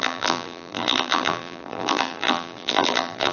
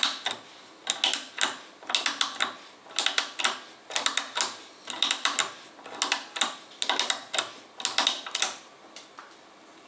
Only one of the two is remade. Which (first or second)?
first